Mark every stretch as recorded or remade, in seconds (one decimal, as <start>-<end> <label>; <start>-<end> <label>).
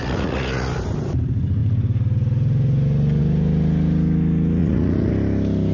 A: 0.0-0.7 remade; 0.7-4.6 recorded; 4.6-5.1 remade; 5.1-5.7 recorded